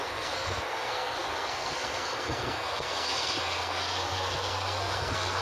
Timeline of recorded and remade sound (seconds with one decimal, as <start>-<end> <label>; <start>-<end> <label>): 0.0-5.4 remade